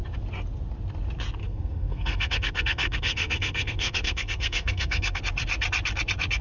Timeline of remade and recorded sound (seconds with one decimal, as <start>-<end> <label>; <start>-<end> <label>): 0.0-1.4 recorded; 1.4-5.2 remade; 5.2-6.4 recorded